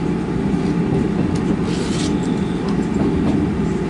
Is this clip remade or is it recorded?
recorded